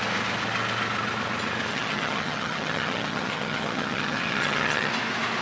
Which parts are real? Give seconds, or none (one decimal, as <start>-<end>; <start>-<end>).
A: 0.0-1.7; 4.9-5.4